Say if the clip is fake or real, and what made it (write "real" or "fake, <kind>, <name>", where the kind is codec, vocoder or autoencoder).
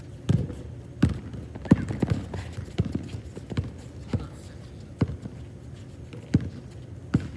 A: real